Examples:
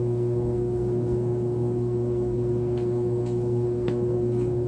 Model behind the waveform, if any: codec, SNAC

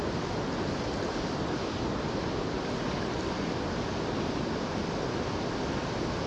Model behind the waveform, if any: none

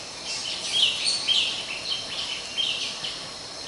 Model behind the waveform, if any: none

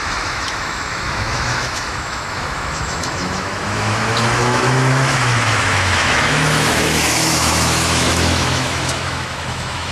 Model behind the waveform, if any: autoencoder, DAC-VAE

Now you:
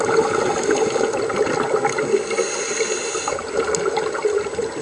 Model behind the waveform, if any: none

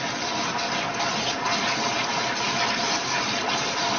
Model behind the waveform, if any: none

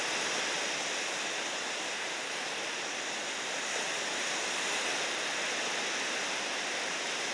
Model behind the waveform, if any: none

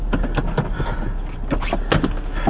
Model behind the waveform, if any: none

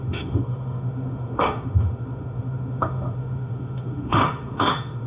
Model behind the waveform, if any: autoencoder, DAC-VAE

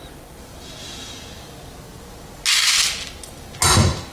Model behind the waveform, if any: none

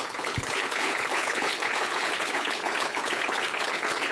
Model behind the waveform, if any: codec, HILCodec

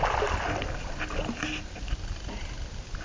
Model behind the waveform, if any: none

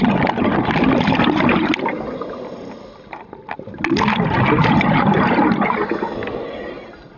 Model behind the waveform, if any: none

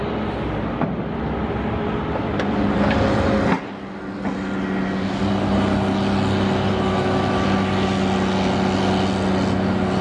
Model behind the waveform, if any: none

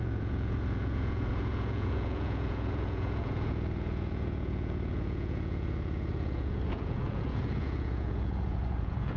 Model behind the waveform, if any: vocoder, Vocos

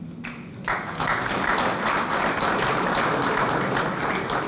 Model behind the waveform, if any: none